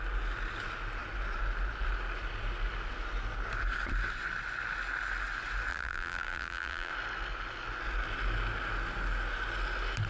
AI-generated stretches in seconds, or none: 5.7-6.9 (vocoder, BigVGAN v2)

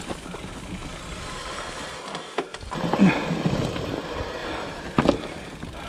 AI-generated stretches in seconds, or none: none

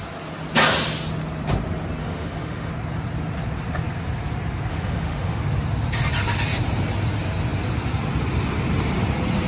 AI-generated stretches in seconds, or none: 2.0-2.7 (autoencoder, DAC-VAE); 4.7-5.4